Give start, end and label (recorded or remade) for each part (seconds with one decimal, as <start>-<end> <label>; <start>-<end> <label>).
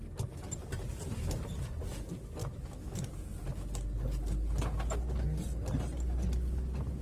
0.0-2.4 recorded; 2.4-3.1 remade; 3.1-7.0 recorded